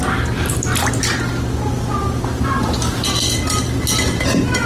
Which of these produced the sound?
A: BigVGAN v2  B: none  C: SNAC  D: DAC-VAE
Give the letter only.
B